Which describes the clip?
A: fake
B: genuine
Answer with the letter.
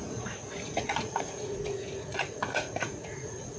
A